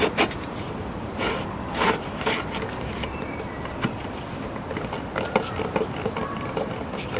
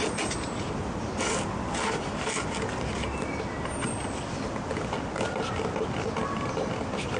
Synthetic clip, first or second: first